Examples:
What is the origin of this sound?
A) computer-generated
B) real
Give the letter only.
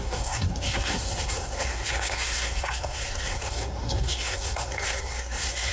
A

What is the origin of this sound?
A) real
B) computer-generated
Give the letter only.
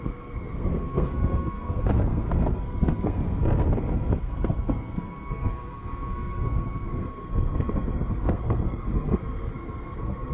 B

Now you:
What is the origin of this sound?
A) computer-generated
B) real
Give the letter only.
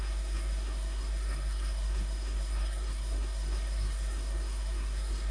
A